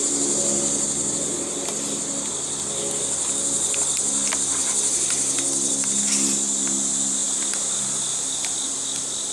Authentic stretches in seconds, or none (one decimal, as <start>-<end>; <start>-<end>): 0.0-9.3